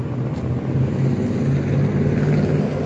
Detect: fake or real real